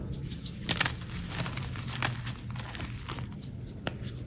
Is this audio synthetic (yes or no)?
no